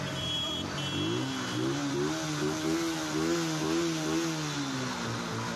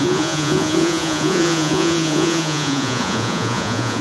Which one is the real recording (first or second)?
first